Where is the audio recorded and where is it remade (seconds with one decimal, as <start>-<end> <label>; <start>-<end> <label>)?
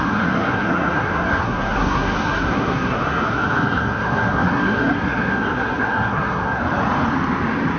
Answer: 0.0-6.6 remade; 6.6-7.8 recorded